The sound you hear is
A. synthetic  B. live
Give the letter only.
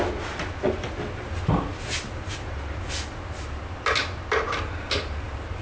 B